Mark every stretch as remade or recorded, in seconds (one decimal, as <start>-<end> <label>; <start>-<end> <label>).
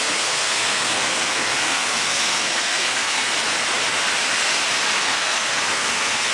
0.0-3.3 remade; 3.3-5.0 recorded; 5.0-6.3 remade